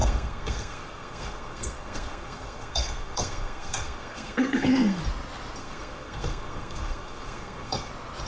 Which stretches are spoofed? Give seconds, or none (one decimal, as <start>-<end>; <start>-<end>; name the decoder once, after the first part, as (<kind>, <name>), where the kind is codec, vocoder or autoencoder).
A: 0.0-5.0 (codec, SNAC); 5.6-7.9